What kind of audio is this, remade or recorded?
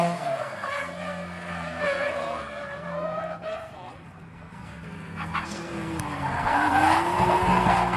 remade